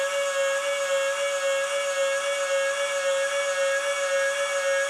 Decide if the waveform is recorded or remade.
recorded